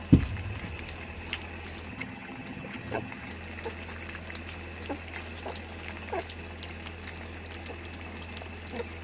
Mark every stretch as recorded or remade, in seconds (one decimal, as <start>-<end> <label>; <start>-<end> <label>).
0.0-1.9 recorded; 1.9-3.3 remade; 3.3-9.0 recorded